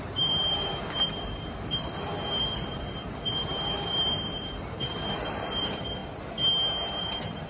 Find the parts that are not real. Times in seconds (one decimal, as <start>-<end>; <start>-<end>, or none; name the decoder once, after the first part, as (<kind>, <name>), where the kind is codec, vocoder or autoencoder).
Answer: 0.0-6.0 (vocoder, BigVGAN v2); 7.0-7.5